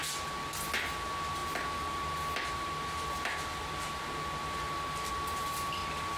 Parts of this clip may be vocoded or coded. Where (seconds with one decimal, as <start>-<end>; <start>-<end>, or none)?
none